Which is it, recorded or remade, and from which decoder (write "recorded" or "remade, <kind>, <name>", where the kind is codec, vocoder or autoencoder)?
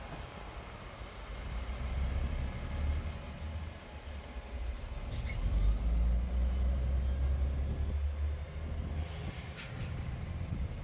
recorded